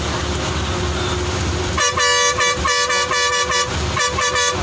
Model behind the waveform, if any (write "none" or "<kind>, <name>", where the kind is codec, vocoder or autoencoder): none